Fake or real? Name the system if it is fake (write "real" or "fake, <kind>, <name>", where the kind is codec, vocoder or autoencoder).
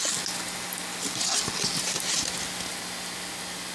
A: real